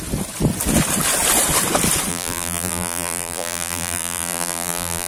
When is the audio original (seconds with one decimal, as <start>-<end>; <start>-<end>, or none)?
0.0-2.1